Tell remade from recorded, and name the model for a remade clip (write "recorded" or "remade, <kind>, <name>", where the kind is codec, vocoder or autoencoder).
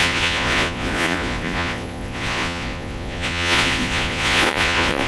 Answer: remade, vocoder, Vocos